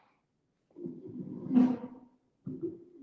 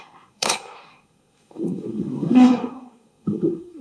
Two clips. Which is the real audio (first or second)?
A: first